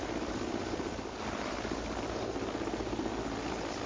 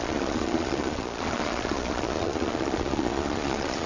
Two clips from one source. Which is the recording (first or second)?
first